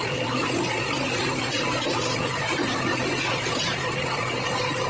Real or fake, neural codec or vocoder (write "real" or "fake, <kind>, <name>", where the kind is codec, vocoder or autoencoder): real